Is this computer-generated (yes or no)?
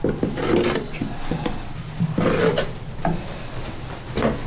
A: no